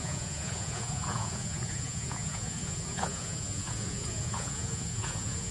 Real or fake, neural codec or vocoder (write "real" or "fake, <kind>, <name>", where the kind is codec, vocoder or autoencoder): fake, vocoder, Vocos